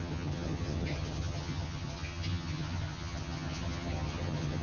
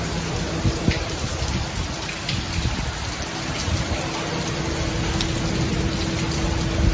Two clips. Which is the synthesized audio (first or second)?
first